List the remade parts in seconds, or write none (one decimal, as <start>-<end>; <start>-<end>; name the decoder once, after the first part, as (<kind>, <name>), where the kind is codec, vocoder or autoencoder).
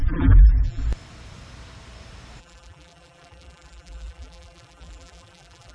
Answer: 0.0-0.8 (vocoder, BigVGAN v2); 2.4-5.7